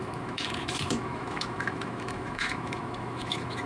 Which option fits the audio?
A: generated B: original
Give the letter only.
A